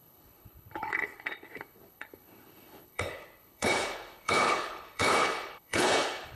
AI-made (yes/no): yes